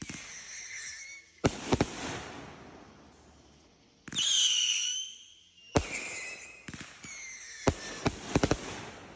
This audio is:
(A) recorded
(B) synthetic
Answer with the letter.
A